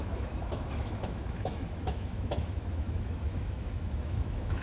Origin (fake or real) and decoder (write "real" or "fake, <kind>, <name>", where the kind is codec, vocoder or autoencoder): fake, autoencoder, DAC-VAE